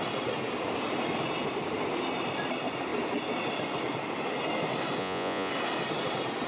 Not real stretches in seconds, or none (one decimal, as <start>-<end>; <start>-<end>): 5.0-5.5